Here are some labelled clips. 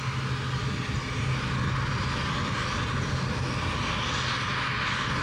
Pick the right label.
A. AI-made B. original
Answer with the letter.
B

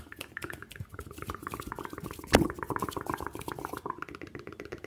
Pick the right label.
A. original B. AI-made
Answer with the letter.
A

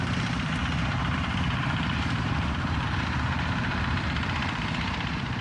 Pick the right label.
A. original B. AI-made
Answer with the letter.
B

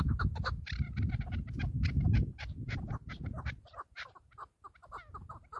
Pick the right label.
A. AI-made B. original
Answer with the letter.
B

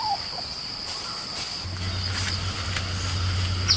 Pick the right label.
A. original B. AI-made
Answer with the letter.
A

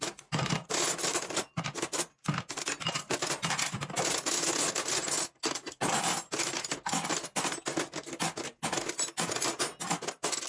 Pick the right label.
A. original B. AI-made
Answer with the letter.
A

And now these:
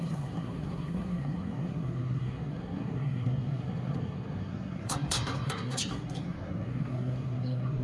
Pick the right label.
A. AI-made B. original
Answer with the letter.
A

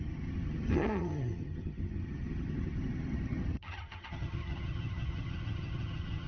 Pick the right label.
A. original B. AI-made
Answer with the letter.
B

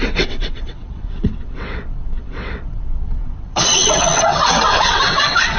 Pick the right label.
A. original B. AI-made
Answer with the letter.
B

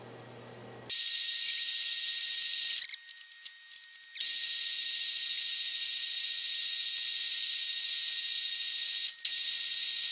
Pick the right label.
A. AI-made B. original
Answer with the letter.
B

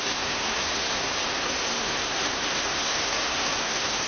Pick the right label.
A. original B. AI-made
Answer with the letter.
B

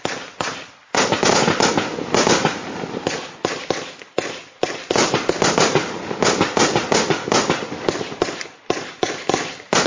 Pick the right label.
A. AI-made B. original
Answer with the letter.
B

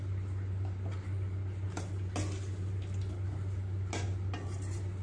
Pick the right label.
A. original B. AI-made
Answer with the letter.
A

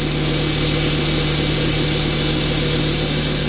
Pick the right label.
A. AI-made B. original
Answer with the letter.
B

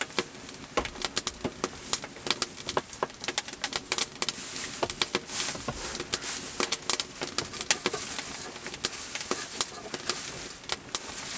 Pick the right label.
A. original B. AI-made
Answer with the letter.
A